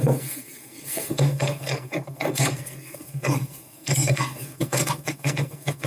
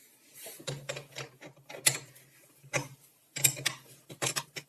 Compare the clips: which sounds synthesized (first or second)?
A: first